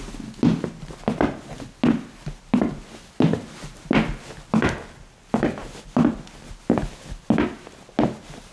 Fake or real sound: real